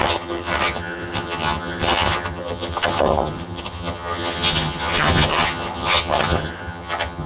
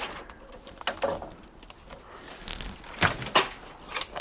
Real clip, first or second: second